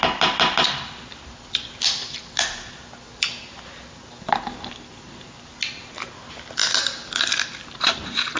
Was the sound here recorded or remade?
recorded